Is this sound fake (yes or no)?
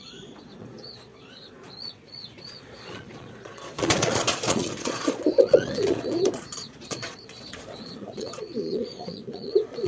yes